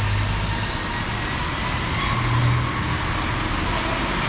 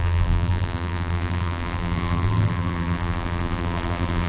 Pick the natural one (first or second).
first